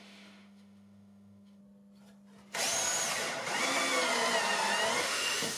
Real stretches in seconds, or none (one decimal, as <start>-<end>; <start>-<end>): 1.6-5.0